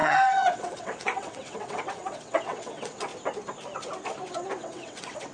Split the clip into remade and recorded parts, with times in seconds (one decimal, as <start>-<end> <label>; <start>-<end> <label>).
0.0-3.1 remade; 3.1-4.6 recorded; 4.6-5.3 remade